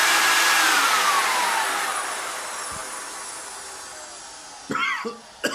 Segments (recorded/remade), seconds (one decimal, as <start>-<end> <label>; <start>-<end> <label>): 0.0-2.4 remade; 2.4-5.5 recorded